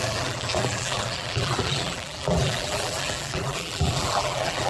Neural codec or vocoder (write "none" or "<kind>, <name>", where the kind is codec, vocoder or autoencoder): vocoder, BigVGAN v2